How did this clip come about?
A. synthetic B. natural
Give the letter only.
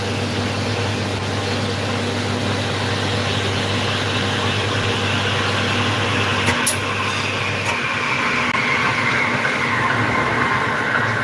B